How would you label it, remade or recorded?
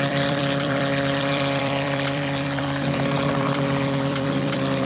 remade